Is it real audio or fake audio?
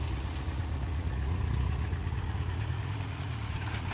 fake